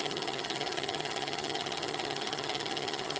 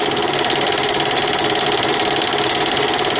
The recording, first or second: second